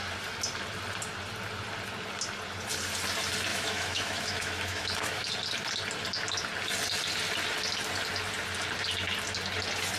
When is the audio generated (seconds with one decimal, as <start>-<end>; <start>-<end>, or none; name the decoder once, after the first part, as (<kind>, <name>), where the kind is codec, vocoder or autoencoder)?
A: 3.5-5.3 (autoencoder, DAC-VAE)